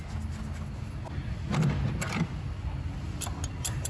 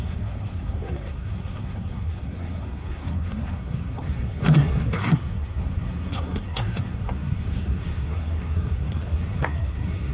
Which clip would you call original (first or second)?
first